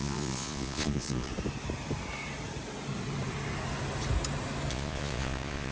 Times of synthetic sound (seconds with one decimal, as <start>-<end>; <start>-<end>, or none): 0.0-1.3; 4.7-5.7